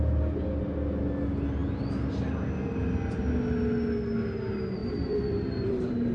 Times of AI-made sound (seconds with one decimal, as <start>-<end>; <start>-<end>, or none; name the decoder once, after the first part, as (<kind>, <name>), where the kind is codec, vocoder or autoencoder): 4.8-6.1 (vocoder, BigVGAN v2)